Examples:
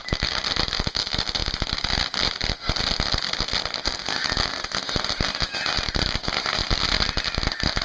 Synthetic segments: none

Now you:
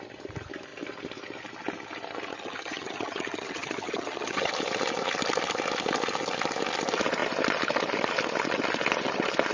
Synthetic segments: 2.3-4.5 (vocoder, HiFi-GAN)

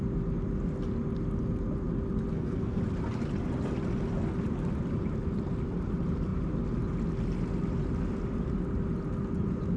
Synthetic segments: 2.3-2.8 (codec, SNAC)

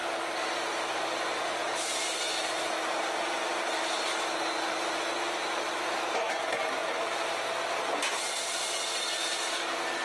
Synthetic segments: none

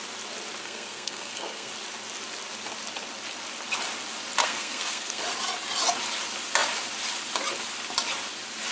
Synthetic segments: 0.6-1.7 (codec, SNAC); 4.4-5.2

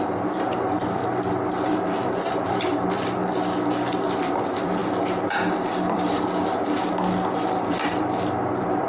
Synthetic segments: 0.0-1.0 (vocoder, BigVGAN v2); 2.1-3.2; 4.1-4.8; 7.5-8.9